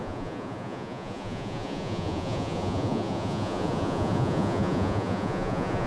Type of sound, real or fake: fake